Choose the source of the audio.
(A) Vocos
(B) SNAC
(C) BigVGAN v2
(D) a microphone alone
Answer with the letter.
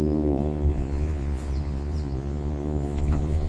A